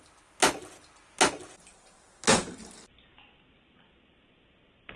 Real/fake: real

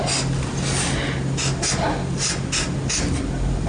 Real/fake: real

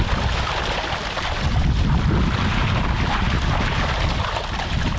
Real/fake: real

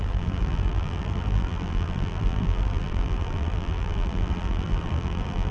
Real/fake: fake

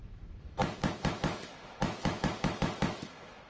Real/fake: fake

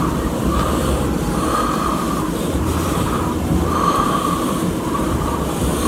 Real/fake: fake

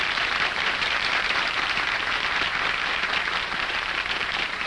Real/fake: fake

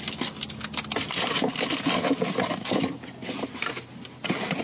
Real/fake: real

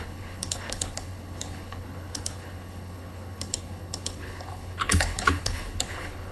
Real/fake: fake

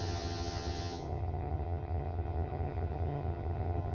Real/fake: fake